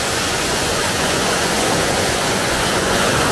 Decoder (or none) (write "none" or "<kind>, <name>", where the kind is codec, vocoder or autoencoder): vocoder, Vocos